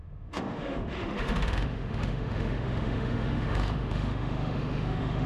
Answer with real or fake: fake